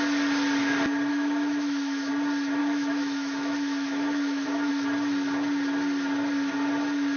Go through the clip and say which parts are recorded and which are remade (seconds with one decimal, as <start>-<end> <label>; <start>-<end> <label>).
0.0-1.1 recorded; 1.1-2.1 remade; 2.1-2.6 recorded; 2.6-4.7 remade; 4.7-7.2 recorded